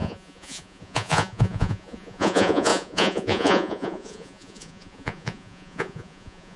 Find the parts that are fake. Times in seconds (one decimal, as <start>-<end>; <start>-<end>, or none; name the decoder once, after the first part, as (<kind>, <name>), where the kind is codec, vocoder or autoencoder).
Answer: 0.0-6.6 (vocoder, Vocos)